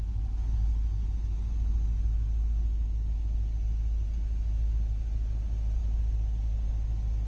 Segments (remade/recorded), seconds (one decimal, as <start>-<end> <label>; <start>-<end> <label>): 0.0-7.3 recorded